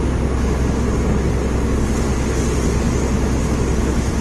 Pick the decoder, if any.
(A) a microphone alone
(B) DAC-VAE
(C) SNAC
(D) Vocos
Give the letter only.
A